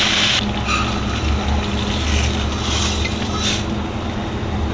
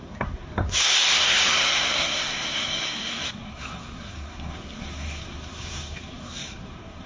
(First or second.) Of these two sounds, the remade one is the second